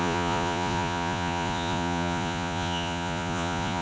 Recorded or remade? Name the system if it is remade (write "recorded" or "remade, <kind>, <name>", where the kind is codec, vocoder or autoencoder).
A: remade, vocoder, Vocos